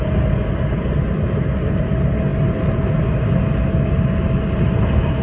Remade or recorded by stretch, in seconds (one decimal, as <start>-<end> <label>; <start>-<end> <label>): 0.0-5.2 recorded